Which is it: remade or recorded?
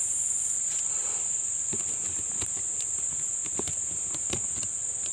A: recorded